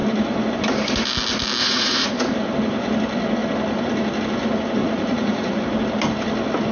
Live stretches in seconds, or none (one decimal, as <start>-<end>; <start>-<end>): 0.0-1.6; 2.1-4.8; 5.6-6.7